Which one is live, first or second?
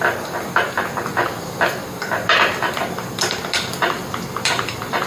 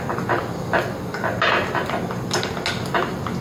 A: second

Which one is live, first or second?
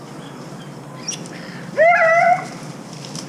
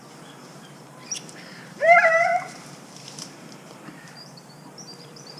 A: first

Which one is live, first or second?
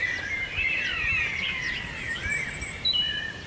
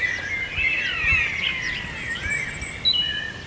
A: second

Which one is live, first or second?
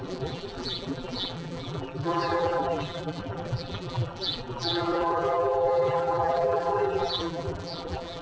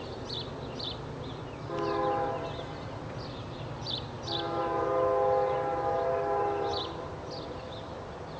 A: second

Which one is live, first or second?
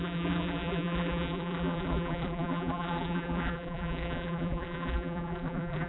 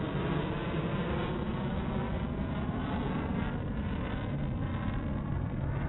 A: second